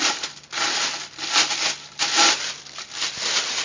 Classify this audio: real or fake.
real